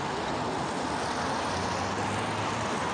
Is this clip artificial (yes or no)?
no